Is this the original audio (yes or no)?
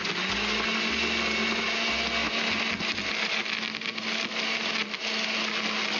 yes